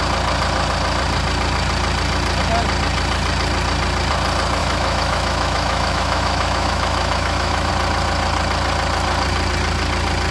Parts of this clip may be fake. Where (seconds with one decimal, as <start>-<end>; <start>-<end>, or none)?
4.6-7.7

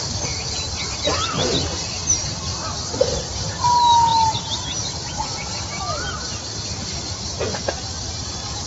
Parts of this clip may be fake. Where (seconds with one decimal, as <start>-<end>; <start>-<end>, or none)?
1.1-2.1; 2.5-3.5

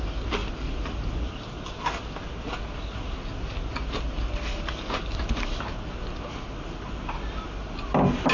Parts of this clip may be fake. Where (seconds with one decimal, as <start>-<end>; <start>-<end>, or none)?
none